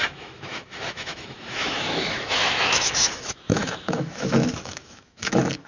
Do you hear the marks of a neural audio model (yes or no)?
yes